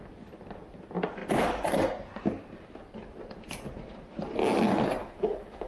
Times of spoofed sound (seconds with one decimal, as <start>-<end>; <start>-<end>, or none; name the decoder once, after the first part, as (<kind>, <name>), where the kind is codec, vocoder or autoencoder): 5.0-5.7 (autoencoder, DAC-VAE)